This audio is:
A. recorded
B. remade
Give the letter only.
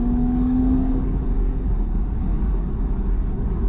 B